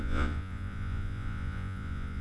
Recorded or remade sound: remade